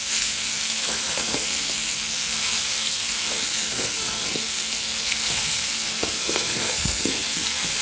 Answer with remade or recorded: remade